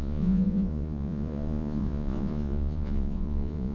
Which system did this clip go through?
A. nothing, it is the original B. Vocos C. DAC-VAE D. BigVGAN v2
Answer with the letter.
B